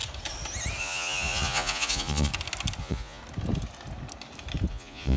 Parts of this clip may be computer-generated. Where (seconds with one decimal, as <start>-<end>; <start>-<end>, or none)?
0.8-2.3; 2.8-3.2; 4.7-5.2